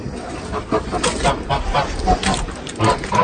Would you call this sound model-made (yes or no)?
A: no